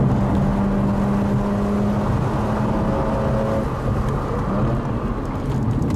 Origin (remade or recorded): recorded